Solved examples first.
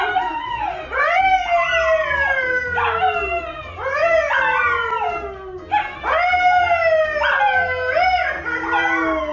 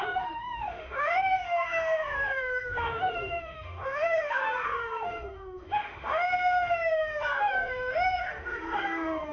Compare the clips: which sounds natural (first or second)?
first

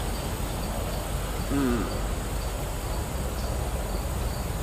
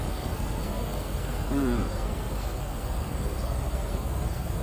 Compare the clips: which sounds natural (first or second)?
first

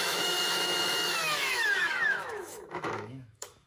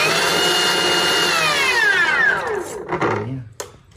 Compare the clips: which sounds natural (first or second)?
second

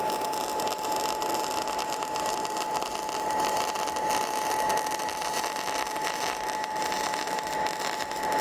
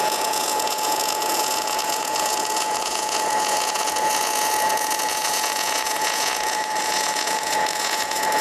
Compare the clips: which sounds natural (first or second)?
first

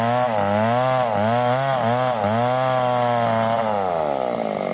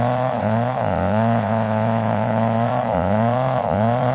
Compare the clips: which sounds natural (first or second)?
first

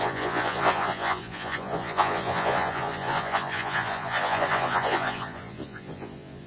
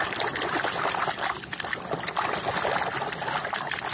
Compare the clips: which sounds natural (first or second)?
second